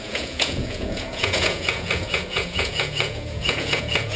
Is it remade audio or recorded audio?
remade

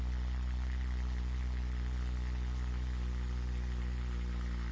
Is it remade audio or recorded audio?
recorded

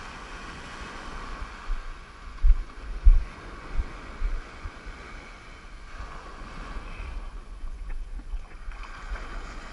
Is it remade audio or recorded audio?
remade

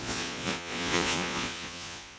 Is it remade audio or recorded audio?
remade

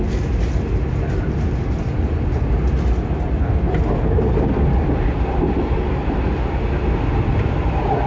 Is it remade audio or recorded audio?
recorded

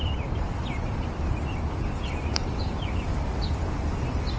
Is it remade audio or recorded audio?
recorded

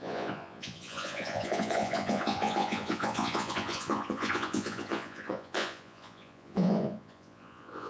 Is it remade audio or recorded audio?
remade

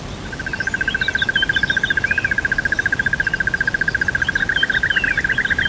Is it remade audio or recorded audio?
recorded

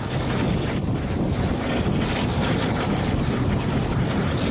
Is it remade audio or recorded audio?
recorded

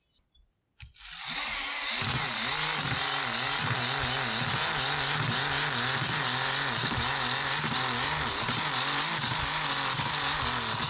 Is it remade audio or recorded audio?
recorded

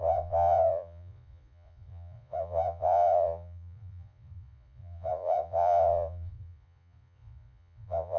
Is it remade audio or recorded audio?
remade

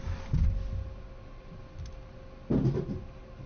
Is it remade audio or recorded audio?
recorded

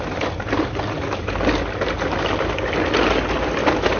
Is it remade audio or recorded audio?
recorded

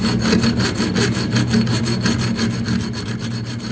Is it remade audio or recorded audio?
recorded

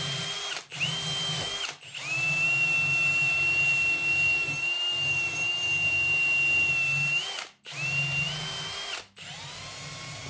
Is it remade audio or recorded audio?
recorded